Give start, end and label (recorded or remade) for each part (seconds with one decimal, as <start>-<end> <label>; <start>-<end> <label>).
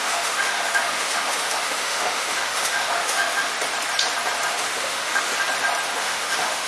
0.0-3.5 remade; 3.5-4.5 recorded; 4.5-5.3 remade; 5.3-6.0 recorded; 6.0-6.7 remade